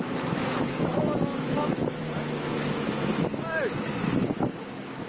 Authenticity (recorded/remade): remade